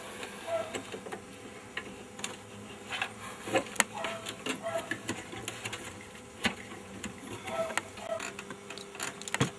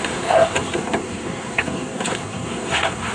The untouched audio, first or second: first